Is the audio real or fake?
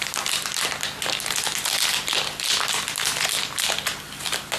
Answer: real